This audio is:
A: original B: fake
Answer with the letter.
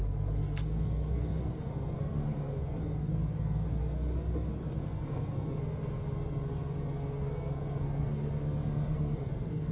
B